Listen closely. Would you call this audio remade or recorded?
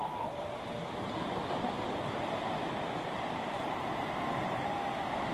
recorded